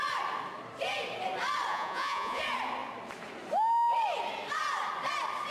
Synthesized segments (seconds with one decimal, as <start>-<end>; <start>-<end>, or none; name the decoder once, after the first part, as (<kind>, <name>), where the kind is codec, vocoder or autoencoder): 1.7-2.4 (vocoder, Vocos)